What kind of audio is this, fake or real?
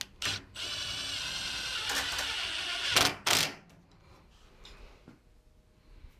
real